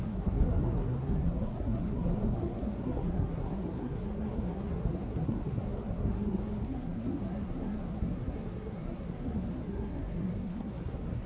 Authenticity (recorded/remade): remade